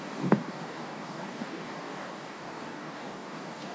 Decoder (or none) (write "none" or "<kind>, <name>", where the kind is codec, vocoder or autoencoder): codec, DAC